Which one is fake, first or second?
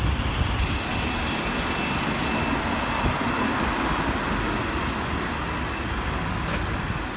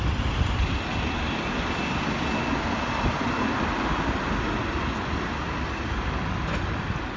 second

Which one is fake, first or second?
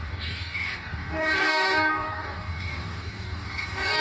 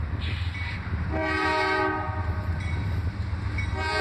first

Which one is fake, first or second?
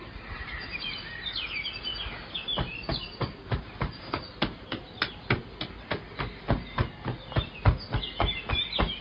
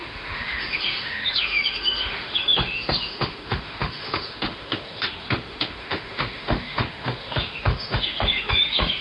second